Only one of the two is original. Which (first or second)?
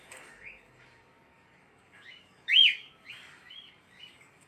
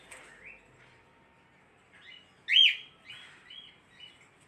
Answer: second